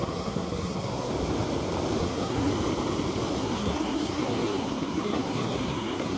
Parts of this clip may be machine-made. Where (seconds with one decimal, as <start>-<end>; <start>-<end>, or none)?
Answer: 0.0-1.1; 2.0-2.5; 3.4-6.2